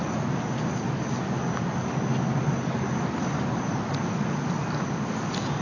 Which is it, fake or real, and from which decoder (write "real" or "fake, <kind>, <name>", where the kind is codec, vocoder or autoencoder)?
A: real